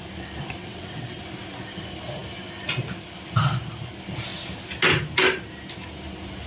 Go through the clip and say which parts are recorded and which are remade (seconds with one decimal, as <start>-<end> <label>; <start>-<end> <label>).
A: 0.0-0.6 recorded; 0.6-1.2 remade; 1.2-6.5 recorded